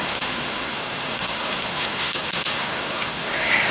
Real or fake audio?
fake